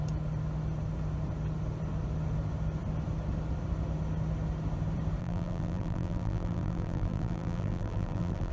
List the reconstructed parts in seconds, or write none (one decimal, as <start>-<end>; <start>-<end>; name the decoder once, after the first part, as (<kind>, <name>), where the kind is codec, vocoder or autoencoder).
5.2-8.5 (vocoder, BigVGAN v2)